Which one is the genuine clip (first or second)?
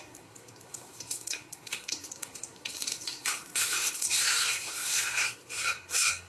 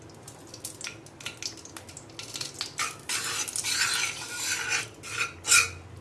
second